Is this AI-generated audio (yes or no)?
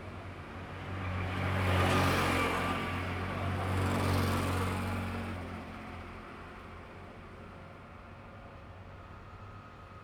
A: no